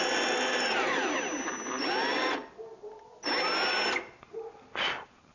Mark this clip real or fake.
real